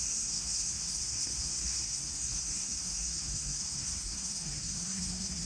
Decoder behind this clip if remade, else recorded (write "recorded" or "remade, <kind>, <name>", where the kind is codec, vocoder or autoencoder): remade, codec, SNAC